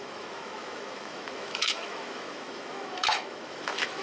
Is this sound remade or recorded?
remade